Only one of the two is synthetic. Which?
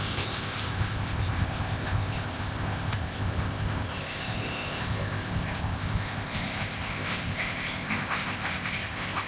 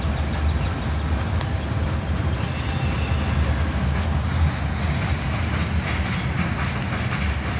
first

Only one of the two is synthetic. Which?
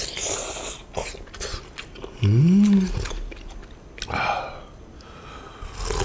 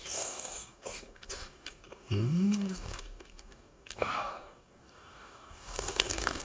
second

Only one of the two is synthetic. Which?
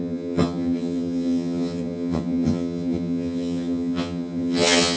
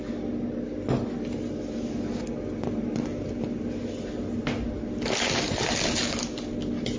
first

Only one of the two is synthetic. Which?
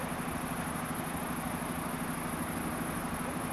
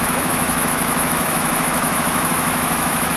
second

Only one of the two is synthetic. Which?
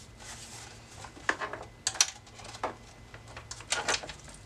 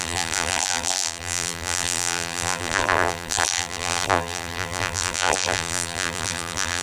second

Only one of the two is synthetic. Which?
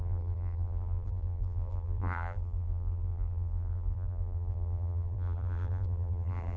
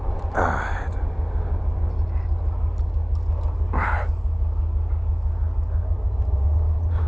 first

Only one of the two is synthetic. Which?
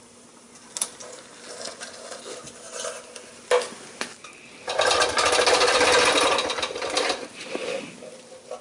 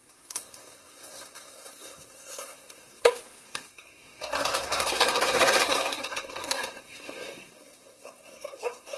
second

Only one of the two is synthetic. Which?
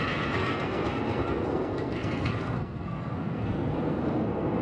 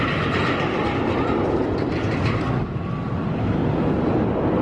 first